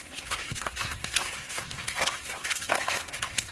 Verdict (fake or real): fake